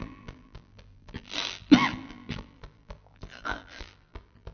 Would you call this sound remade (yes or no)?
yes